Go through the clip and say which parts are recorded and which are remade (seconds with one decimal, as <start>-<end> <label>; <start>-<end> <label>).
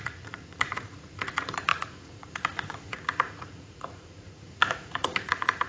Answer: 0.0-5.7 remade